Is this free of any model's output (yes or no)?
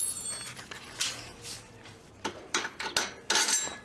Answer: yes